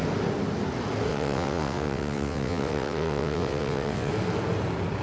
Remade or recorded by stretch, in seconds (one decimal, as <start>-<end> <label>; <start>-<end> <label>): 0.0-1.1 recorded; 1.1-4.1 remade; 4.1-5.0 recorded